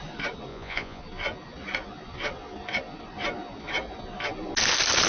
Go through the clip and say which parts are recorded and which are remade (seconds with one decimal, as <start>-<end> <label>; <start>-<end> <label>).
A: 0.0-0.5 recorded; 0.5-1.0 remade; 1.0-5.1 recorded